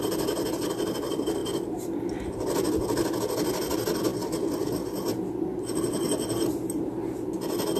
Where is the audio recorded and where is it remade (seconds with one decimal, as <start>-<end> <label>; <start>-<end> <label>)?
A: 0.0-7.8 recorded